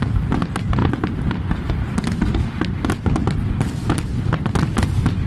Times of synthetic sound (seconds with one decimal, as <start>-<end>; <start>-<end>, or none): none

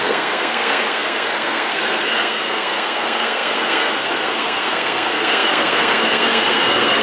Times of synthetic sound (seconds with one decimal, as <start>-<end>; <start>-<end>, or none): 0.0-7.0